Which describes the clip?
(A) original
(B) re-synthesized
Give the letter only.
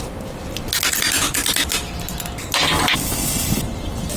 A